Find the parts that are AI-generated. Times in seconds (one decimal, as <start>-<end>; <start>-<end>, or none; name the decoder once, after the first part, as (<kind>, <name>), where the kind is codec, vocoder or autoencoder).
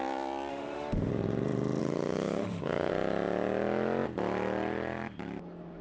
0.5-1.1 (autoencoder, DAC-VAE); 1.8-2.9